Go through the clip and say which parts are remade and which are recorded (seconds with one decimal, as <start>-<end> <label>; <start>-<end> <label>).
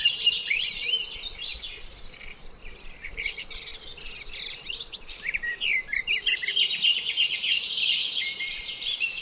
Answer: 0.0-1.5 remade; 1.5-3.1 recorded; 3.1-3.7 remade; 3.7-4.4 recorded; 4.4-9.2 remade